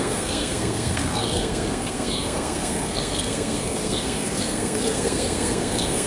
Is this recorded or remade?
remade